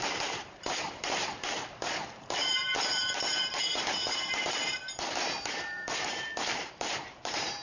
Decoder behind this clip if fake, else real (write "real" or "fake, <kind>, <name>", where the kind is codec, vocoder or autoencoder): fake, vocoder, BigVGAN v2